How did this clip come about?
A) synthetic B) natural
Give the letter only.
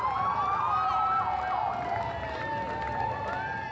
B